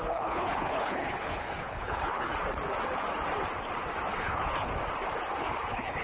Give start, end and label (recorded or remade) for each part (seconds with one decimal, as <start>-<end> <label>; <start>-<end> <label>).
0.0-2.3 remade; 2.3-4.1 recorded; 4.1-4.7 remade; 4.7-5.4 recorded; 5.4-6.0 remade